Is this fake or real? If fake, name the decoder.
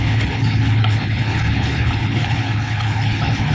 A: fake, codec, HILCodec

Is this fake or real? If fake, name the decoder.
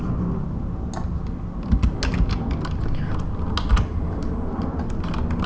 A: real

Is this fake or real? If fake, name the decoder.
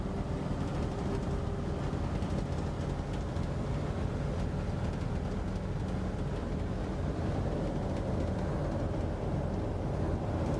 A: real